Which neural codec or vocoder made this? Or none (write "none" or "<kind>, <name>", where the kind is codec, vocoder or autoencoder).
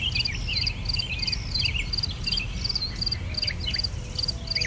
none